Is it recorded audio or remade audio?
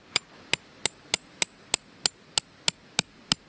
recorded